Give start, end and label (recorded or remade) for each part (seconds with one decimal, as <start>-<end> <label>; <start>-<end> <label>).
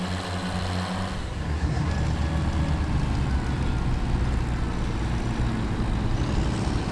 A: 0.0-1.2 recorded; 1.2-1.9 remade; 1.9-6.9 recorded